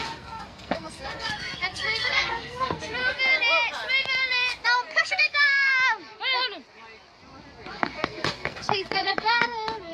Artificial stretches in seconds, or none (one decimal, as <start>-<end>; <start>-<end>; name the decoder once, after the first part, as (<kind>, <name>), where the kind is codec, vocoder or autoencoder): 0.0-3.0 (codec, SNAC); 5.0-5.7; 7.7-9.9